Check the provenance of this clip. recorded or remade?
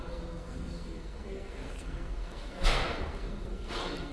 remade